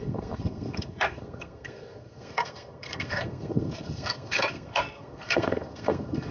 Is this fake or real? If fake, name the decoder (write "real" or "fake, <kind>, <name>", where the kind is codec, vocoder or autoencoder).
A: fake, codec, SNAC